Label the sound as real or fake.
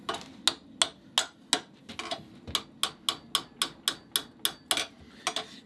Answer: real